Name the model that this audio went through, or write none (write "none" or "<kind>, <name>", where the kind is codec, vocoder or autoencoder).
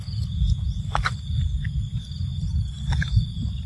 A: none